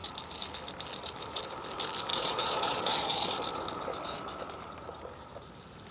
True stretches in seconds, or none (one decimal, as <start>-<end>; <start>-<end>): 0.0-2.1; 3.3-5.9